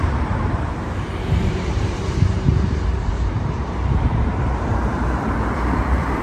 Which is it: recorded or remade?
remade